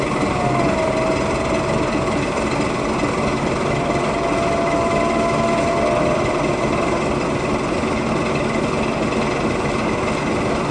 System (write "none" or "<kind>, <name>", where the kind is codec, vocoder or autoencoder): none